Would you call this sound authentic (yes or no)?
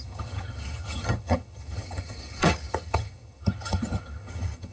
no